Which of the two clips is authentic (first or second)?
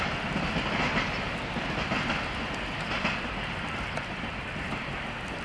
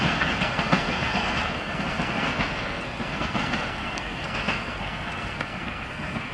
first